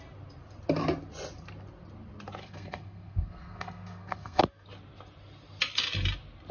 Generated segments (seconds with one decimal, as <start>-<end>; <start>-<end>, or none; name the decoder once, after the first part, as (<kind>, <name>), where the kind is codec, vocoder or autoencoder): 2.4-4.4 (codec, SNAC)